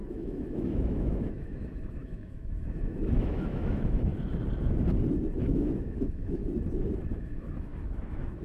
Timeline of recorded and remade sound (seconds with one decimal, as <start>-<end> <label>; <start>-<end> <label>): 0.0-4.1 remade; 4.1-5.4 recorded; 5.4-6.4 remade; 6.4-7.1 recorded; 7.1-8.4 remade